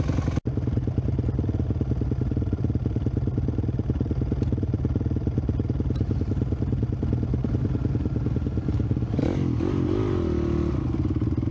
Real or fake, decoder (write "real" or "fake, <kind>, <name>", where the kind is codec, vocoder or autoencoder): real